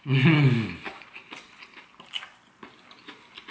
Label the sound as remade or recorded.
recorded